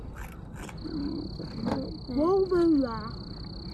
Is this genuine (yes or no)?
yes